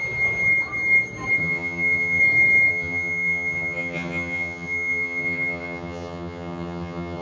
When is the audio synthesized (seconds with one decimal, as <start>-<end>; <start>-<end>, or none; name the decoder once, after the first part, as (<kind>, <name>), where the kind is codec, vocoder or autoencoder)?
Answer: 1.4-2.2 (vocoder, HiFi-GAN); 2.7-7.2